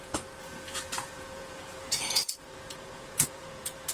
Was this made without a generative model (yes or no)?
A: no